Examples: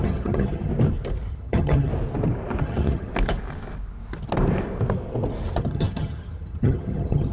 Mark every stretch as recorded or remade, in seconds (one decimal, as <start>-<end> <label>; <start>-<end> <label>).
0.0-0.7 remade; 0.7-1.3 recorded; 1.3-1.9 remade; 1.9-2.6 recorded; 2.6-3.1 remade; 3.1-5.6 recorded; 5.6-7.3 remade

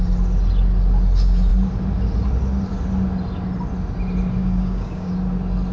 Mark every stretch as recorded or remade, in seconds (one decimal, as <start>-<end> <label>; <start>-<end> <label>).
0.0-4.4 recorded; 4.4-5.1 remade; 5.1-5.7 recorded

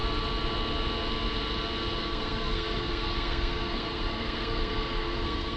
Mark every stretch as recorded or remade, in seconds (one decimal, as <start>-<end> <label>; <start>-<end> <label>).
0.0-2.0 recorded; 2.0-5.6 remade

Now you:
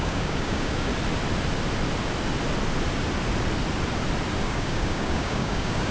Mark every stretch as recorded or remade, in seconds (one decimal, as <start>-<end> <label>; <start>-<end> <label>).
0.0-0.9 remade; 0.9-4.4 recorded; 4.4-5.9 remade

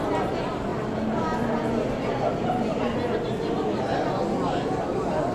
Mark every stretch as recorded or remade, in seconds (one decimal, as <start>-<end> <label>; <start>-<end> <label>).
0.0-5.3 recorded

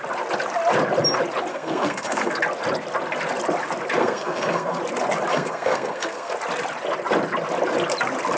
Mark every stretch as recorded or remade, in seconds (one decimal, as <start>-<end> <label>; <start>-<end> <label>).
0.0-1.5 recorded; 1.5-2.3 remade; 2.3-4.0 recorded; 4.0-4.8 remade; 4.8-5.3 recorded; 5.3-6.3 remade; 6.3-8.4 recorded